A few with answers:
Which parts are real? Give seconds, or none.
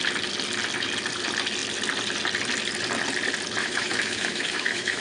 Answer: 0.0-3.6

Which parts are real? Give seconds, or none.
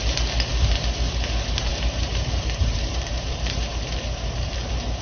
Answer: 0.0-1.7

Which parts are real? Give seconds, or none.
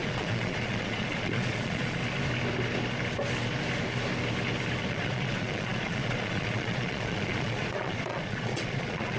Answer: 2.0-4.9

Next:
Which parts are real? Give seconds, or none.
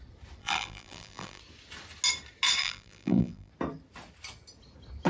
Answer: 0.0-0.4; 1.4-2.6; 3.5-5.1